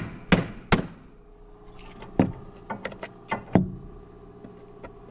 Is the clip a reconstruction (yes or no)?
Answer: no